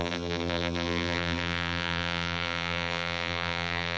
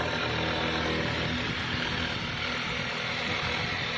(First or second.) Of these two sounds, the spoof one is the first